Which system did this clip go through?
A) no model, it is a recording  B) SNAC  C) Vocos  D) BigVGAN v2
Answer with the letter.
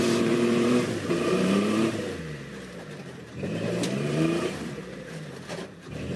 D